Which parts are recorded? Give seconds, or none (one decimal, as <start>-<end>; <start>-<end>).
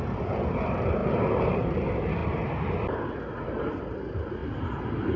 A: 0.0-1.0; 1.8-5.2